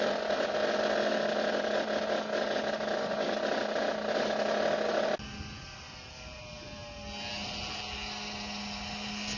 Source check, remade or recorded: recorded